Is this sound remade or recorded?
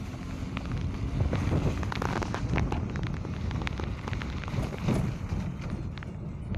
recorded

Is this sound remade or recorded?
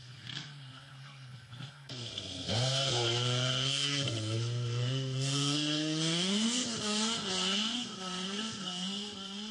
remade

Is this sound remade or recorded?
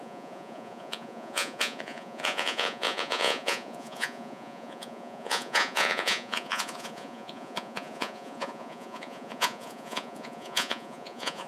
remade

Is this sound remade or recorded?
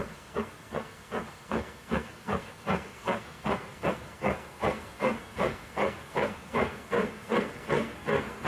remade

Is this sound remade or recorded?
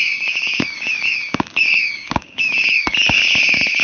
remade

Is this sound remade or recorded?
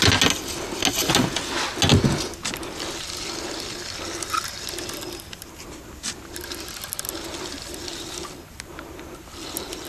recorded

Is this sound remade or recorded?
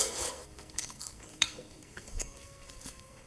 remade